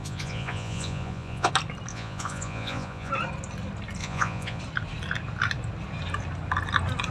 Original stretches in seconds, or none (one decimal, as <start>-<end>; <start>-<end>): 1.5-1.9; 3.1-4.0; 4.6-7.1